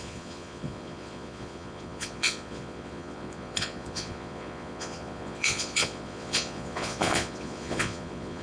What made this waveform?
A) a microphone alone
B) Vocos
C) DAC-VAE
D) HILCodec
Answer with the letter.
B